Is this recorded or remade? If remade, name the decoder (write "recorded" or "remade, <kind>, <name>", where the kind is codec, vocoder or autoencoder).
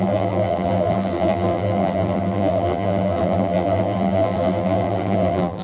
remade, vocoder, BigVGAN v2